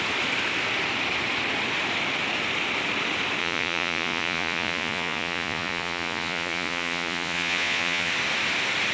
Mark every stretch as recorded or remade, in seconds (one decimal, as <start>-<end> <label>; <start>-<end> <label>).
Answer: 0.0-3.4 recorded; 3.4-8.1 remade; 8.1-8.9 recorded